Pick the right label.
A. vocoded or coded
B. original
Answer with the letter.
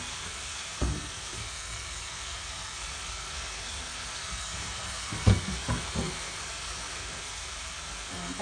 A